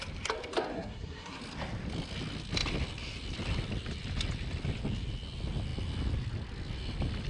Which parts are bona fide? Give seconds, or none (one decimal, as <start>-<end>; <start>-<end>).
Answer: 0.0-0.7; 1.4-7.3

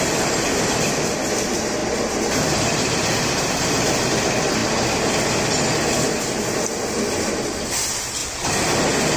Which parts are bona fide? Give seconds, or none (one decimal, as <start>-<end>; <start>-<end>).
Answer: 0.0-1.8; 3.3-8.2

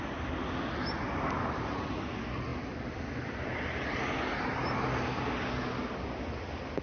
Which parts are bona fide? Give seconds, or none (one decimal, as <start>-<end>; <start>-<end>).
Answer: 0.0-6.8